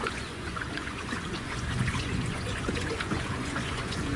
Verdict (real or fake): fake